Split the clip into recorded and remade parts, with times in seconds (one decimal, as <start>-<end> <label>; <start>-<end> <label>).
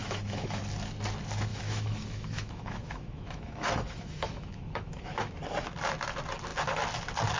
0.0-0.6 remade; 0.6-1.5 recorded; 1.5-5.3 remade; 5.3-7.4 recorded